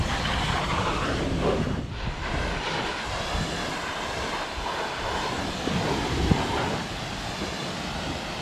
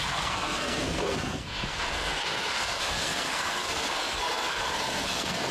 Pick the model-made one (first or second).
second